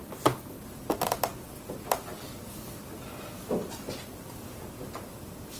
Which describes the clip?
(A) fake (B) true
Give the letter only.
B